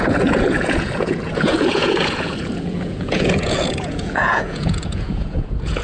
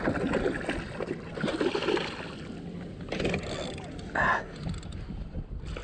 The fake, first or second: first